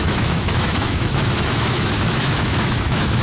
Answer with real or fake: fake